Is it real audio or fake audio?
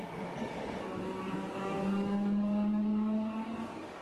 fake